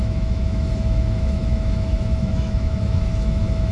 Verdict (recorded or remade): remade